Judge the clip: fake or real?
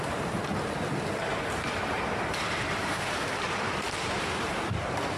fake